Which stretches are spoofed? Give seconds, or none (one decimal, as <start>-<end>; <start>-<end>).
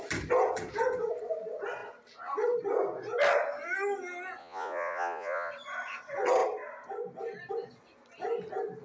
4.4-5.5